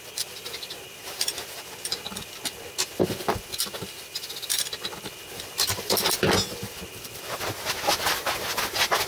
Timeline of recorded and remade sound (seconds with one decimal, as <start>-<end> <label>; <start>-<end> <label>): 0.0-9.1 recorded